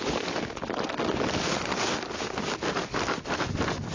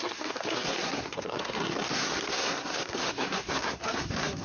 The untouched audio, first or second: first